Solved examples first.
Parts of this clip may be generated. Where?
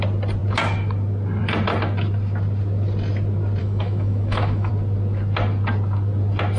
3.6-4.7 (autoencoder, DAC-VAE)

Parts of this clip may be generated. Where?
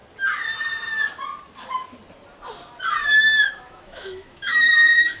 3.0-5.2 (autoencoder, DAC-VAE)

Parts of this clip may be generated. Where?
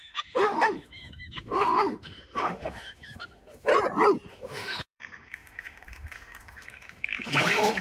0.0-3.7 (autoencoder, DAC-VAE); 4.3-7.8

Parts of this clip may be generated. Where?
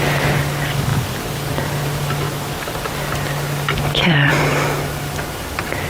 none